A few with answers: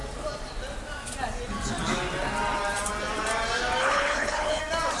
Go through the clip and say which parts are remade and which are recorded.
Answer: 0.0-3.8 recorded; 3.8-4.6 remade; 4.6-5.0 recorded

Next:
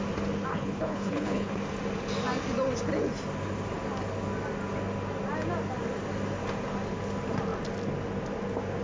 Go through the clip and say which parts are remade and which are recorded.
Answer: 0.0-0.5 recorded; 0.5-1.5 remade; 1.5-8.8 recorded

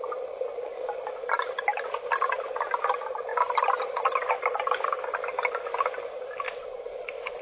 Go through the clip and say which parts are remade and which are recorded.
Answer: 0.0-7.4 recorded

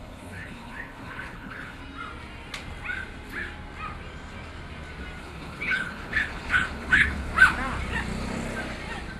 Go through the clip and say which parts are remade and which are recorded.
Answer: 0.0-1.8 remade; 1.8-5.2 recorded; 5.2-7.3 remade; 7.3-9.2 recorded